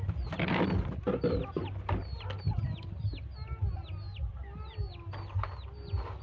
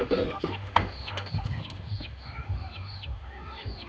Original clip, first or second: first